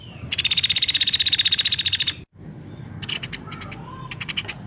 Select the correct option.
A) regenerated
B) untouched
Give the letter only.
B